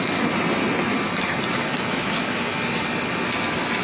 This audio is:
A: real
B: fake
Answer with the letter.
A